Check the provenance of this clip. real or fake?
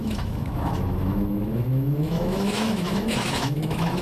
fake